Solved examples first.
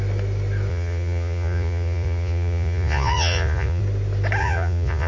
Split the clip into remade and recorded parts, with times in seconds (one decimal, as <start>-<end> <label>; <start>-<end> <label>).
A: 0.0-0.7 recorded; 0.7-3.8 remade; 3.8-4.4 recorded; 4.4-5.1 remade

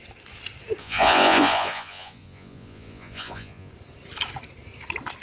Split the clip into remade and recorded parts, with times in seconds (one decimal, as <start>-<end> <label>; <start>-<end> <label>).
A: 0.0-0.8 recorded; 0.8-3.7 remade; 3.7-5.2 recorded

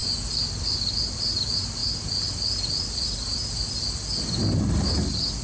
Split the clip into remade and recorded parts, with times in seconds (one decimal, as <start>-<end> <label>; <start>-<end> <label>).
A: 0.0-5.4 recorded

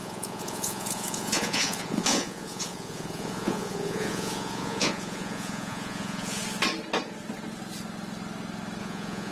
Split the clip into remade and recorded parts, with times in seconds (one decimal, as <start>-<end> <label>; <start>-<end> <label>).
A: 0.0-6.4 remade; 6.4-8.8 recorded; 8.8-9.3 remade

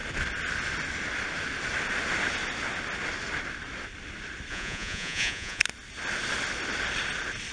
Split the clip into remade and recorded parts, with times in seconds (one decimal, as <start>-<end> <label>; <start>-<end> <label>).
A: 0.0-4.5 recorded; 4.5-5.6 remade; 5.6-7.5 recorded

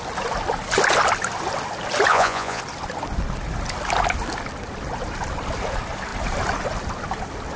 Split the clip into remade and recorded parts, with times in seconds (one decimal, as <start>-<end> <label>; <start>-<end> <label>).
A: 0.0-2.1 recorded; 2.1-2.6 remade; 2.6-7.6 recorded